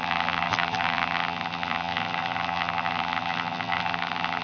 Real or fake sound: fake